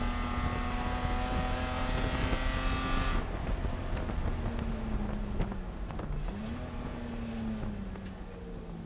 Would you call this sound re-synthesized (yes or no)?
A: no